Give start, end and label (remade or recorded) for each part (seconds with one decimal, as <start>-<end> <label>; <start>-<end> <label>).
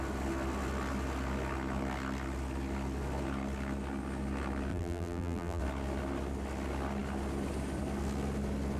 0.0-4.7 recorded; 4.7-5.6 remade; 5.6-8.8 recorded